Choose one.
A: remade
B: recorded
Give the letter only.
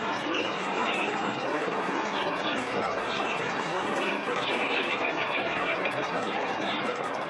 A